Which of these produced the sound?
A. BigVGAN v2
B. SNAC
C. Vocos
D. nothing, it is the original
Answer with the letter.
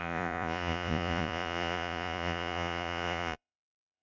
C